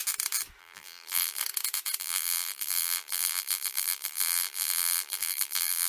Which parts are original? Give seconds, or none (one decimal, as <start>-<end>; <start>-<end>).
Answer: 0.0-0.6; 1.4-2.0

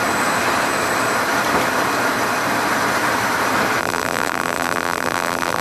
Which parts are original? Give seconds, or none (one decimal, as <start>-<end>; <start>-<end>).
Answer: 0.0-3.8

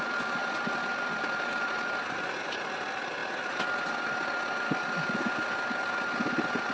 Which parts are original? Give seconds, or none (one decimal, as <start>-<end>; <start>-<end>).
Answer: 3.2-6.7

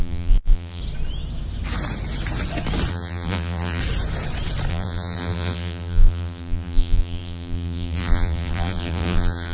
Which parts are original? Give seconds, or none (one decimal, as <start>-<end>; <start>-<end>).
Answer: 0.8-2.9; 3.8-4.7

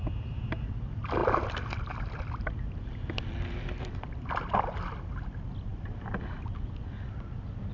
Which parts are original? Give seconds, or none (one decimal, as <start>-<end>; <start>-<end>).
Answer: 0.0-1.2; 2.4-5.7; 6.7-7.7

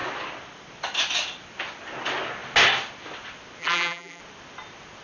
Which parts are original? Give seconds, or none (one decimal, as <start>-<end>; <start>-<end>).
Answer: 0.0-3.6; 4.2-5.0

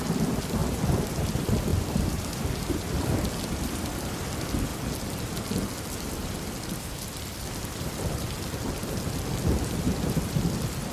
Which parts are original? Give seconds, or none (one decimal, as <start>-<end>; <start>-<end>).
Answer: 0.6-1.1; 4.7-6.9; 8.8-9.7